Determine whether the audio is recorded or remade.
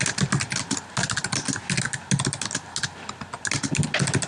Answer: recorded